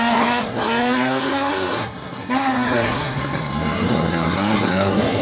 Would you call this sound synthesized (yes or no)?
yes